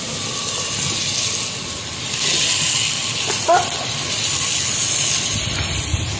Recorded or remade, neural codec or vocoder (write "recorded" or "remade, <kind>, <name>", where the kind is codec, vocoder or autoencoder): recorded